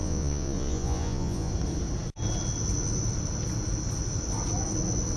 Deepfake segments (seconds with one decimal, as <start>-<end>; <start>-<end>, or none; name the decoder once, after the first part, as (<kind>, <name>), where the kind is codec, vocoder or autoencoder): 0.0-1.5 (vocoder, Vocos)